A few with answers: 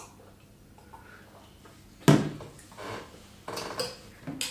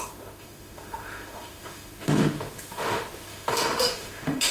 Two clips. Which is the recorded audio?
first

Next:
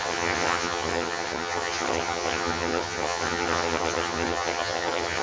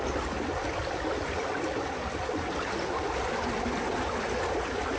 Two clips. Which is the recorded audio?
second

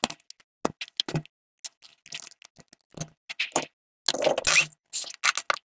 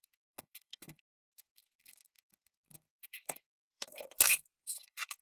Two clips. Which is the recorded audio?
first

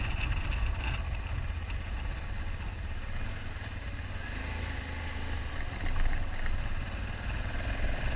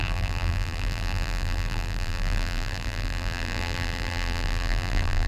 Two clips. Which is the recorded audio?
first